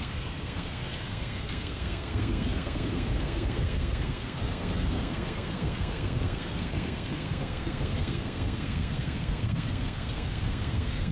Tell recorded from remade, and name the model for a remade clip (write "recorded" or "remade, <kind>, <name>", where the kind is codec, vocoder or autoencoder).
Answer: remade, codec, SNAC